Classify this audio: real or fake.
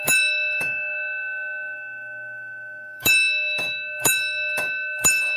fake